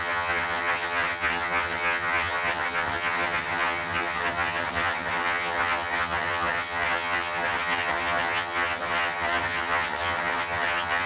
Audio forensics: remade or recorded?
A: remade